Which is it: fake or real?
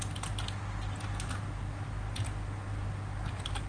real